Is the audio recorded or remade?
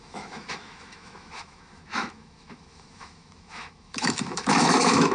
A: remade